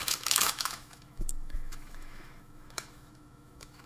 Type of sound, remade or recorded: remade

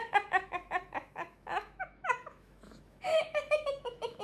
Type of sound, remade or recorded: remade